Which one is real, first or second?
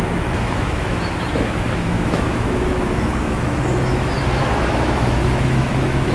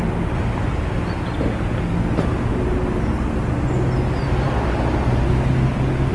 second